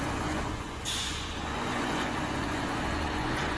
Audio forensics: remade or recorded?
remade